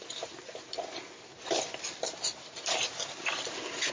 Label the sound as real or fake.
real